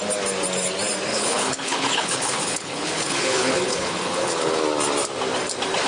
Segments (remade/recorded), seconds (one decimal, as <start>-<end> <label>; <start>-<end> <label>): 0.0-1.1 recorded; 1.1-4.6 remade; 4.6-5.9 recorded